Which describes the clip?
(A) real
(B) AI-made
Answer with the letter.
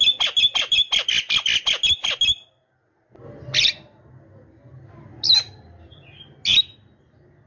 A